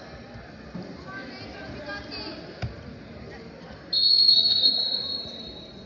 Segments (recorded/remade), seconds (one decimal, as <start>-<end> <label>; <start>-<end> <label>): 0.0-4.1 recorded; 4.1-4.7 remade; 4.7-5.9 recorded